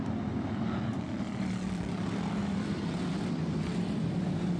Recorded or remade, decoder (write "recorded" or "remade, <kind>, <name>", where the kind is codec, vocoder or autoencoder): remade, vocoder, BigVGAN v2